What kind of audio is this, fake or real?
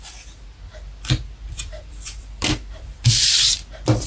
fake